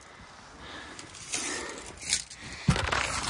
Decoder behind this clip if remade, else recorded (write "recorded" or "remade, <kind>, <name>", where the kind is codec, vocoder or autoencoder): recorded